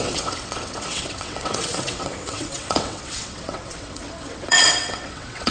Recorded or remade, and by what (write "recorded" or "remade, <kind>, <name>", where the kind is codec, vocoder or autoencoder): remade, vocoder, WaveNeXt